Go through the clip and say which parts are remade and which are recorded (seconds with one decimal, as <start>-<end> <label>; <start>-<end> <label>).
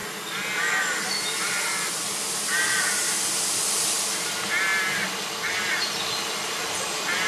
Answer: 0.0-7.3 recorded